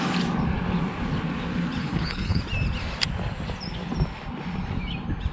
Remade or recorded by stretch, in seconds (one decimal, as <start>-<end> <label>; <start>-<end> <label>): 0.0-1.8 recorded; 1.8-2.4 remade; 2.4-5.3 recorded